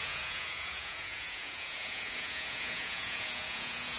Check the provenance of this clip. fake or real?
fake